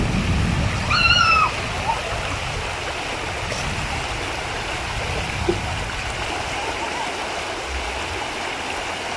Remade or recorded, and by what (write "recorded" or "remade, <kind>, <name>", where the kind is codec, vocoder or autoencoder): recorded